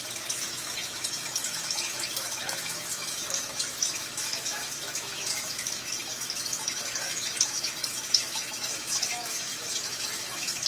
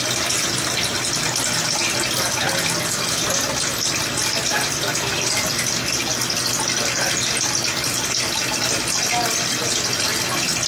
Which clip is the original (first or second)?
second